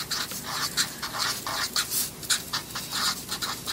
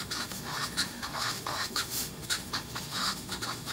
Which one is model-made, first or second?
second